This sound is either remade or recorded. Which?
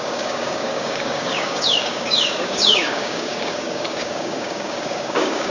remade